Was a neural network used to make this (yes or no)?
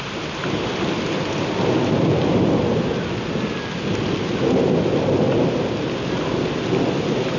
no